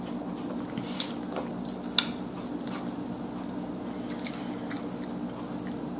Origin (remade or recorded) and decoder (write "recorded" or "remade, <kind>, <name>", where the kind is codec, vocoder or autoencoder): recorded